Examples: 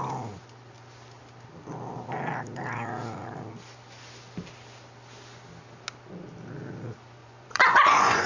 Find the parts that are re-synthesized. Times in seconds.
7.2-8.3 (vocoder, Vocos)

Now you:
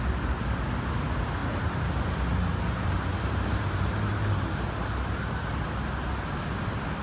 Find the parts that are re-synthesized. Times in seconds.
1.4-5.6 (vocoder, BigVGAN v2)

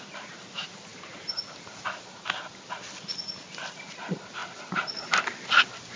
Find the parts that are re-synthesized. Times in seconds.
none

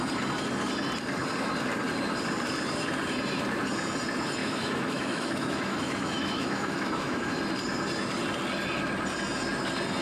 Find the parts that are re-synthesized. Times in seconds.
4.4-7.4 (autoencoder, DAC-VAE)

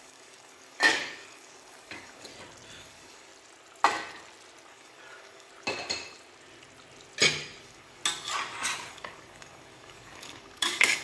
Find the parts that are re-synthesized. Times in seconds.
0.0-2.3 (codec, DAC); 2.8-3.3; 4.7-5.5; 7.6-8.0; 8.9-11.0